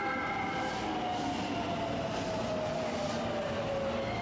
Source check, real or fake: real